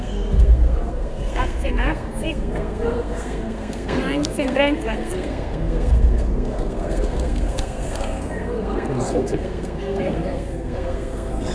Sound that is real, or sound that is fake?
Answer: fake